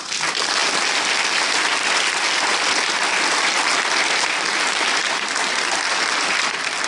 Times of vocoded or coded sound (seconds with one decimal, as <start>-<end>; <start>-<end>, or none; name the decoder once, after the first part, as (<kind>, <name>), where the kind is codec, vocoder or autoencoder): none